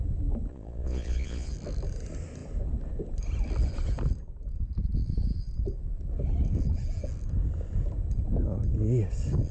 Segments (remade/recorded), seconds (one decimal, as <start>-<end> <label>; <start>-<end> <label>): 0.0-0.5 recorded; 0.5-1.5 remade; 1.5-9.5 recorded